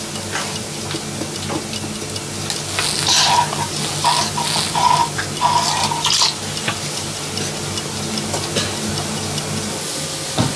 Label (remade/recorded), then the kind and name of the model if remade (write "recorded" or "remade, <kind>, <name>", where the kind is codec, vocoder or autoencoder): recorded